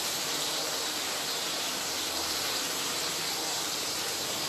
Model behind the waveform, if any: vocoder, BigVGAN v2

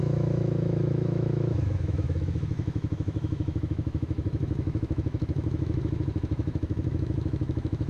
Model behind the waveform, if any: autoencoder, DAC-VAE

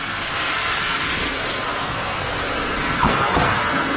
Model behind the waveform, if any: codec, SNAC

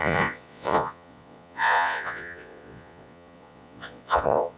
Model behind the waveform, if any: vocoder, Vocos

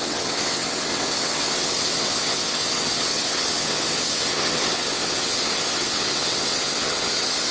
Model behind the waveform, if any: vocoder, WaveNeXt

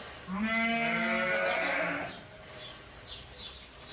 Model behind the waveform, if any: none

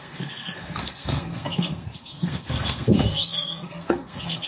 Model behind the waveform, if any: codec, SNAC